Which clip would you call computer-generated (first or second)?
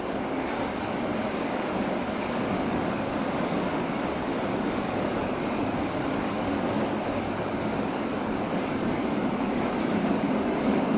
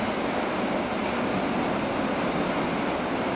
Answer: first